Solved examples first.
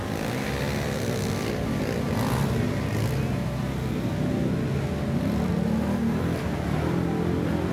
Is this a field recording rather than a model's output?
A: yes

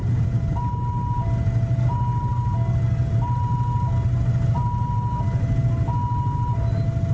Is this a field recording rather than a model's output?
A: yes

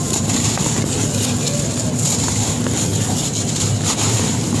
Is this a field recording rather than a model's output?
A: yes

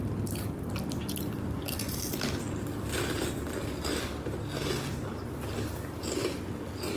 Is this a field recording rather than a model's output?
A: yes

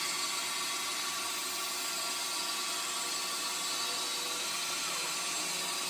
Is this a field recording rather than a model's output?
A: yes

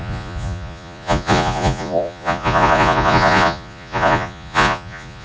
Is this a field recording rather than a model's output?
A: no